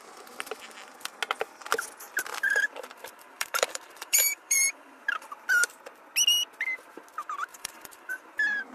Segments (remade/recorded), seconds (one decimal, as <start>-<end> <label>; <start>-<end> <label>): 0.0-2.3 recorded; 2.3-6.0 remade; 6.0-7.5 recorded; 7.5-8.7 remade